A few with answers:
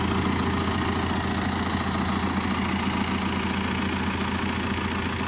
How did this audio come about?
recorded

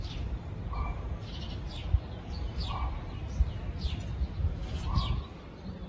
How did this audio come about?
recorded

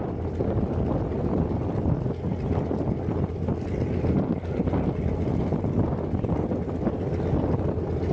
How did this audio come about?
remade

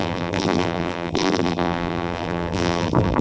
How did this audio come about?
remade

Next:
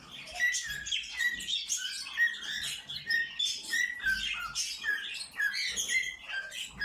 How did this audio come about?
recorded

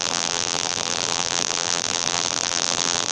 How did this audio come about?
remade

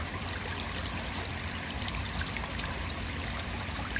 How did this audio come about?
remade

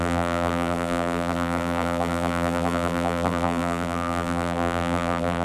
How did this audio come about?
remade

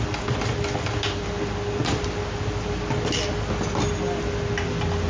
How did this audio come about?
recorded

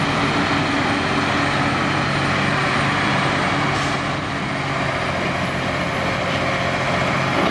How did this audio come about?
recorded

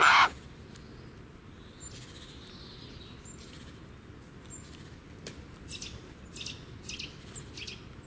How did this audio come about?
recorded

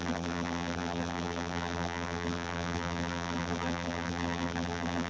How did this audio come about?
remade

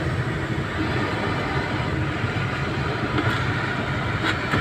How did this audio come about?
recorded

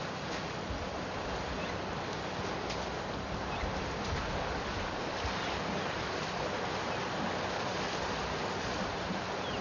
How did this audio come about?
recorded